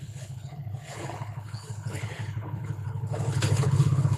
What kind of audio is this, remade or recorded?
remade